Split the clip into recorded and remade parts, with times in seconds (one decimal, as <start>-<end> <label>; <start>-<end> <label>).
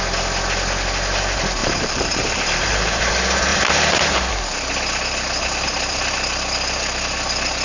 0.0-1.6 recorded; 1.6-3.1 remade; 3.1-3.5 recorded; 3.5-4.3 remade; 4.3-7.6 recorded